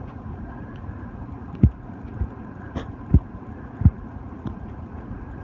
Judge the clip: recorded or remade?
remade